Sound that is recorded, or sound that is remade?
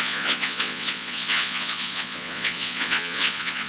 remade